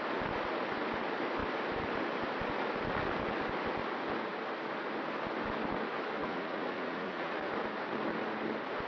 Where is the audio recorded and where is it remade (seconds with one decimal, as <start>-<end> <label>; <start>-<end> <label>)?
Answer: 0.0-6.2 recorded; 6.2-7.5 remade; 7.5-8.9 recorded